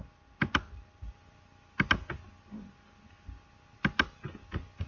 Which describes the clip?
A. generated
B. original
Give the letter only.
B